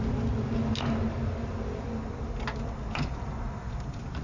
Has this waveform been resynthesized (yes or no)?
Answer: no